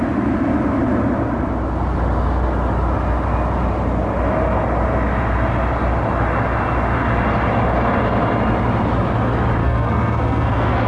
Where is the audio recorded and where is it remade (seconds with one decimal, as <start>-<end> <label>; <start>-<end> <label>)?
0.0-9.6 recorded; 9.6-10.9 remade